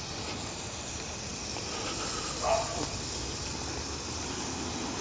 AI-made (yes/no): no